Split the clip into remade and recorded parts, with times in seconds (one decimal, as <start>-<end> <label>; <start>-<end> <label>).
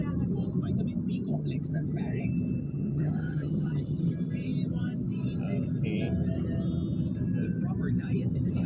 0.0-1.3 recorded; 1.3-2.0 remade; 2.0-2.6 recorded; 2.6-4.0 remade; 4.0-8.7 recorded